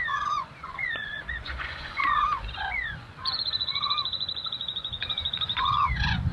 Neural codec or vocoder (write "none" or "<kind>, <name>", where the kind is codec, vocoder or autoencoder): vocoder, Vocos